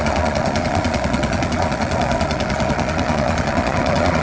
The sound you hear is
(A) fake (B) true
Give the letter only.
A